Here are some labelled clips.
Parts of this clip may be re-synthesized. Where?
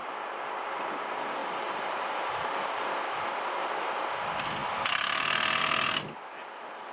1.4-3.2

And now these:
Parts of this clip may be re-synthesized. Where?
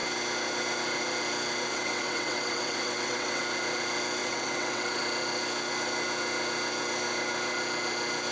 1.7-3.4; 4.2-5.0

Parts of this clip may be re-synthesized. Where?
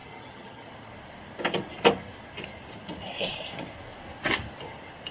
0.0-0.7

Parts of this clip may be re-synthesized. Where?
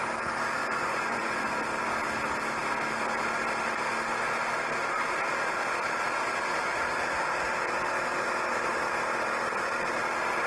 0.6-1.5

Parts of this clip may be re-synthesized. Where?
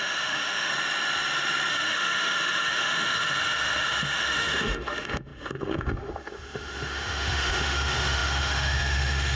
0.0-0.7; 1.7-9.4